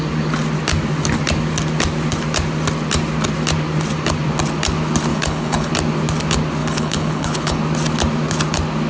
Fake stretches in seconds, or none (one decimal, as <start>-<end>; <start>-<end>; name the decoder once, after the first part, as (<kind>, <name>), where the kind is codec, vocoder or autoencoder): 5.1-5.7 (codec, HILCodec); 6.6-7.6